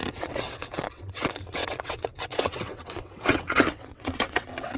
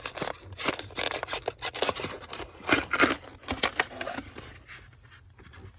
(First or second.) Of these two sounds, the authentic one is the second